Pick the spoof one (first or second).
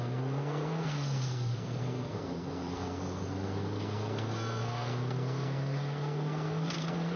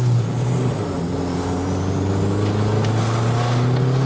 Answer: first